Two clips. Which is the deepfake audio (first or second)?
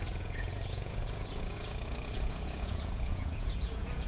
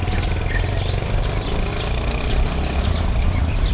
first